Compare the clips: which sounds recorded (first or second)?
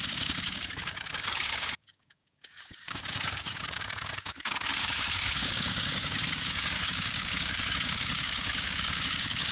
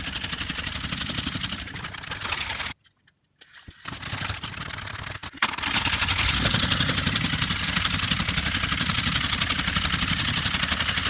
second